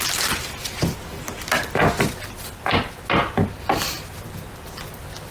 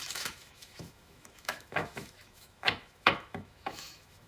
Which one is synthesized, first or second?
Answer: second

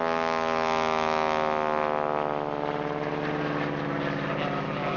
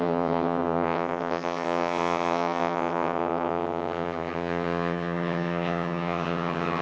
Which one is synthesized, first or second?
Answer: second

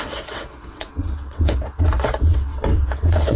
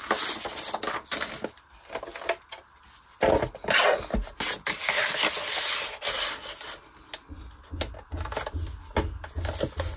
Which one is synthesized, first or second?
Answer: first